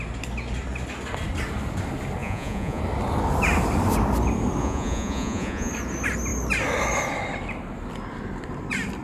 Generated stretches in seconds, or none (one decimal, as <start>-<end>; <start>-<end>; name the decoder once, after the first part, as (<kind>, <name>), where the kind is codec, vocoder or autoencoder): 2.2-2.8 (vocoder, Vocos); 4.6-5.7